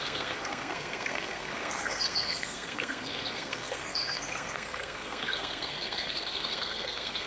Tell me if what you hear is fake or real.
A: fake